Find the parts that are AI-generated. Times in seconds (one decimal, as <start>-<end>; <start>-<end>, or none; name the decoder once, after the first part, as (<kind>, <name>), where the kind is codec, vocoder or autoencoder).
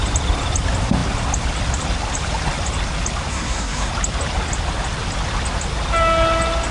3.3-3.9 (codec, SNAC)